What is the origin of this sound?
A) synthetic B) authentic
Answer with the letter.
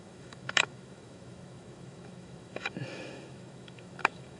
A